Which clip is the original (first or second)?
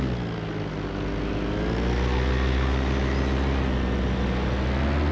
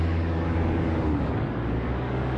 first